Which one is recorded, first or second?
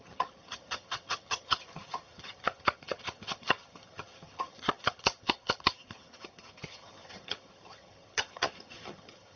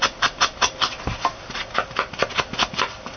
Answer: second